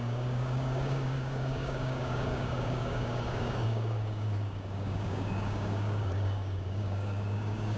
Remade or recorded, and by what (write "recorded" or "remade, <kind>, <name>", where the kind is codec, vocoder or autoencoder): remade, codec, DAC